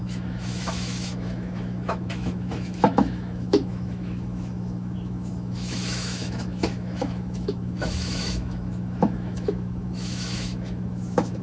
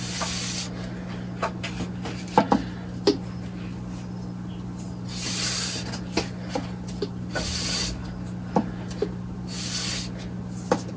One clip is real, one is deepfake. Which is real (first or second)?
second